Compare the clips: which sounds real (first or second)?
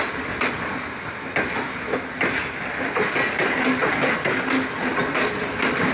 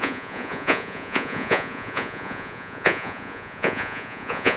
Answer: first